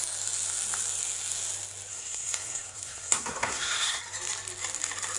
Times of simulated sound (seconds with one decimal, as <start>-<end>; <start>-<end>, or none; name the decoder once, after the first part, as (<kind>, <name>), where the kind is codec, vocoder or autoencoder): 1.9-4.0 (codec, SNAC)